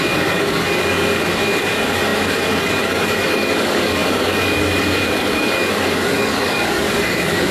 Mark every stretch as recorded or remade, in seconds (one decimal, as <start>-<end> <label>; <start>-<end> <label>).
0.0-7.5 remade